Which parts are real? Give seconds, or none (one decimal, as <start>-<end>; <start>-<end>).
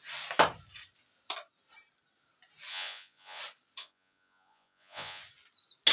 0.0-2.7; 3.4-3.8; 5.2-5.9